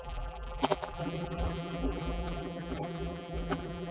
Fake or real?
fake